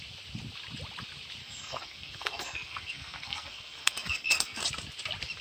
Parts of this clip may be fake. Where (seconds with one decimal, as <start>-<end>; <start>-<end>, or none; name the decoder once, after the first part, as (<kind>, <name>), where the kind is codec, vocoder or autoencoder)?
1.4-4.6 (codec, SNAC)